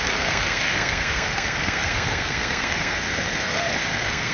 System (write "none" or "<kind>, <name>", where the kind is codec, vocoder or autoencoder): codec, SNAC